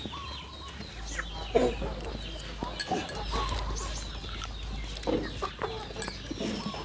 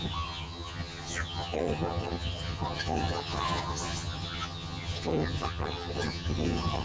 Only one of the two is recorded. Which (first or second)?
first